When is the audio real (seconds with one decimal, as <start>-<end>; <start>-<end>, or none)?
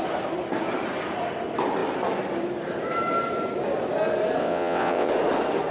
0.0-4.4; 5.1-5.7